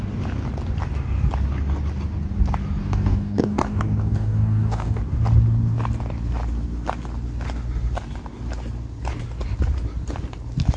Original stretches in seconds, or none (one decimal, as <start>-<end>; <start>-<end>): 0.0-2.8; 5.0-10.8